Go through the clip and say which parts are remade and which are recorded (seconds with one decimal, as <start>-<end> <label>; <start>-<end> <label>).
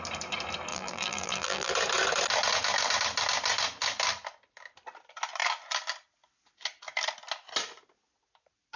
0.0-0.7 recorded; 0.7-1.7 remade; 1.7-8.8 recorded